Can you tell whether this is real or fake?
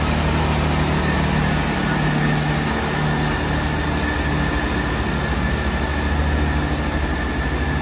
real